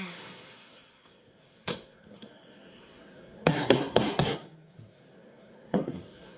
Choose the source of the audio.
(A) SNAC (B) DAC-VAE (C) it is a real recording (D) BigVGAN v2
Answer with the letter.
A